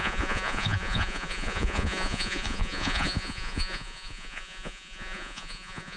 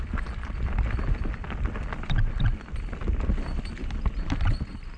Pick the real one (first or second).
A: second